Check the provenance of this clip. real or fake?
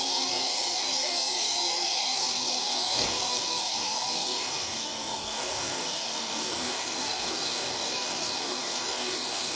fake